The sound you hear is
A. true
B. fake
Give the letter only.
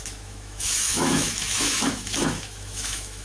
B